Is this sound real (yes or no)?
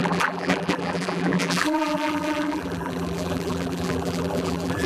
no